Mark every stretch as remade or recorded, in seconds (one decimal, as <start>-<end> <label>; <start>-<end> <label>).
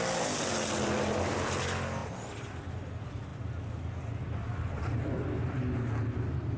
0.0-6.6 recorded